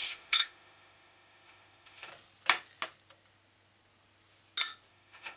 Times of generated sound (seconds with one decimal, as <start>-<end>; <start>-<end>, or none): 0.0-2.1; 4.9-5.4